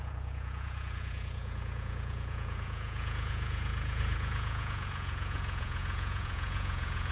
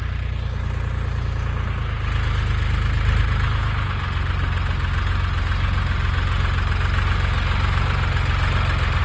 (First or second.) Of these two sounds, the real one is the second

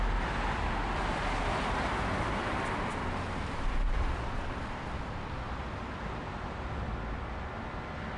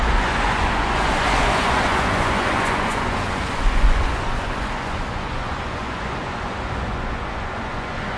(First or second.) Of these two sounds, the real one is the first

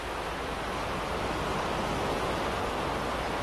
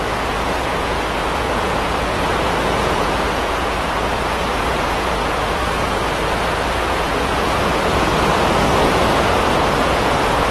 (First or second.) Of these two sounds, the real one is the first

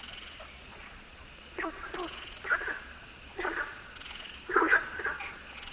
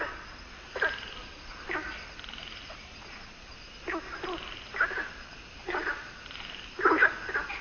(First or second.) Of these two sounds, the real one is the second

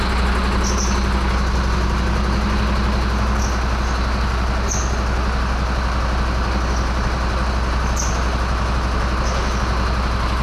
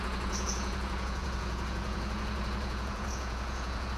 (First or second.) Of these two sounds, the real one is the first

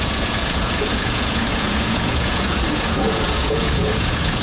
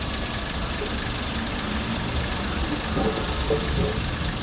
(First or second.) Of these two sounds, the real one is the second